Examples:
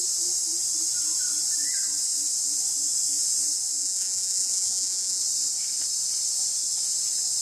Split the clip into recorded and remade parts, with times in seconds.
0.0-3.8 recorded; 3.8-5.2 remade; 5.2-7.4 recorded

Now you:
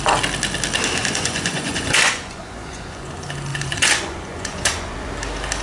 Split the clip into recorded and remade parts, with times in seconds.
0.0-1.0 recorded; 1.0-3.1 remade; 3.1-3.5 recorded; 3.5-5.1 remade; 5.1-5.6 recorded

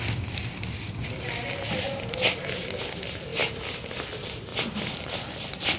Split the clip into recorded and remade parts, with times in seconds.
0.0-5.8 recorded

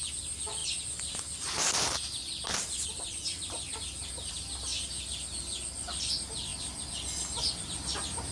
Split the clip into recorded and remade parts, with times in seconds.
0.0-8.3 recorded

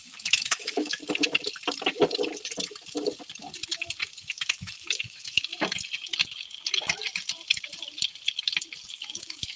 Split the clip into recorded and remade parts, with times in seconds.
0.0-1.0 remade; 1.0-4.2 recorded; 4.2-5.5 remade; 5.5-8.9 recorded; 8.9-9.6 remade